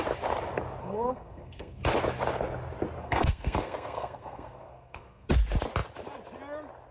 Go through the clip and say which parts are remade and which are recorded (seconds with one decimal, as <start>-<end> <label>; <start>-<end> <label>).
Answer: 0.0-0.8 recorded; 0.8-1.8 remade; 1.8-3.0 recorded; 3.0-5.3 remade; 5.3-6.9 recorded